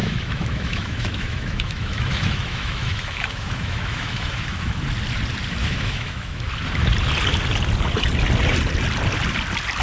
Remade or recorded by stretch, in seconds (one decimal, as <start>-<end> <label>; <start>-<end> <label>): 0.0-4.8 remade; 4.8-5.6 recorded; 5.6-6.5 remade; 6.5-9.8 recorded